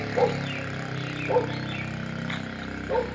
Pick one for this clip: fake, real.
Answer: real